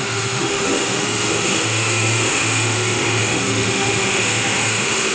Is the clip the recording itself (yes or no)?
no